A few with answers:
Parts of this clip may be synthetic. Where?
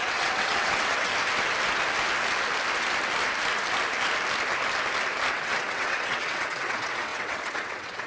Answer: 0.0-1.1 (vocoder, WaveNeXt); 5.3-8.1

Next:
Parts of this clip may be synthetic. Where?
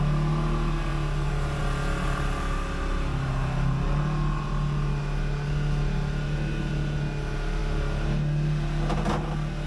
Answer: none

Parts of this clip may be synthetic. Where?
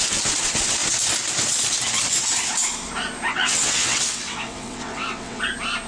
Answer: 3.3-5.4 (vocoder, WaveNeXt)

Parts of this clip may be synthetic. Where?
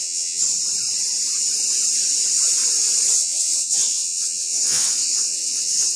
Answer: 0.0-0.4 (vocoder, WaveNeXt); 3.1-6.0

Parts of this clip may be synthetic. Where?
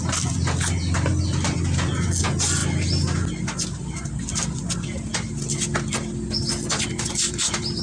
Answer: none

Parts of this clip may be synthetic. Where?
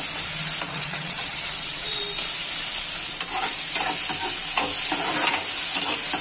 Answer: 0.7-2.0 (vocoder, WaveNeXt)